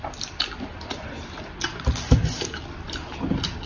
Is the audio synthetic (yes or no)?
no